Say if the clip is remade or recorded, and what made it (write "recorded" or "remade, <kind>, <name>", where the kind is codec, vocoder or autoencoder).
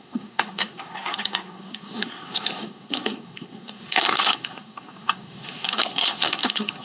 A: remade, codec, SNAC